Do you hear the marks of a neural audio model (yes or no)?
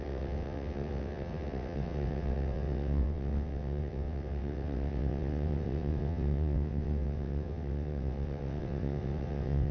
yes